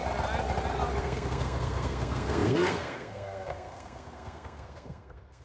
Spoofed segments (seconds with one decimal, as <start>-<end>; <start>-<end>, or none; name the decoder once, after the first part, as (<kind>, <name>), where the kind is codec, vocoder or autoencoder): 1.0-5.4 (codec, SNAC)